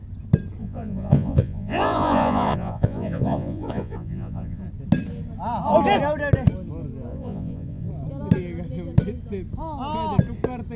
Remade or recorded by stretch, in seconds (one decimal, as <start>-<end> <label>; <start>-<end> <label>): 0.0-0.6 recorded; 0.6-4.6 remade; 4.6-7.1 recorded; 7.1-7.9 remade; 7.9-10.8 recorded